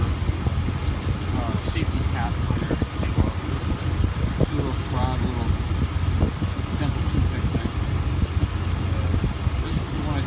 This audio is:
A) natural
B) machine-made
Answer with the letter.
A